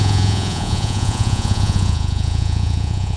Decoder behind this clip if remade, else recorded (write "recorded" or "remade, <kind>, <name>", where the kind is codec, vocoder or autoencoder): remade, vocoder, Vocos